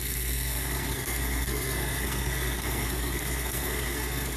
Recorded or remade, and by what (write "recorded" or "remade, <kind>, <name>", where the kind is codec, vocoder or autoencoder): remade, codec, SNAC